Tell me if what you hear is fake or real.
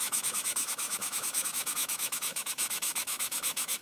fake